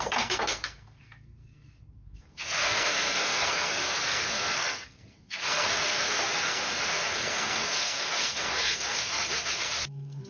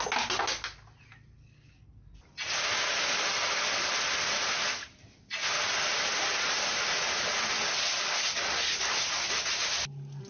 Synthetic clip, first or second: first